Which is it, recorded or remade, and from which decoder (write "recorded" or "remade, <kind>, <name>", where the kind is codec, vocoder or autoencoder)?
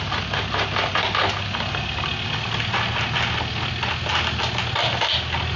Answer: recorded